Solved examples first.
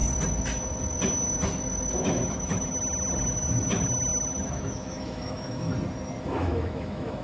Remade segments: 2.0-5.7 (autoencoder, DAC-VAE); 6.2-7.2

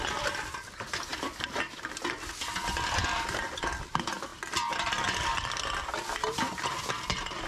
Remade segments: none